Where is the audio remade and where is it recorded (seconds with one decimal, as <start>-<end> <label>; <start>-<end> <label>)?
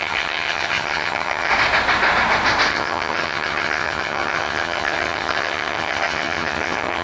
0.0-1.5 remade; 1.5-2.7 recorded; 2.7-7.0 remade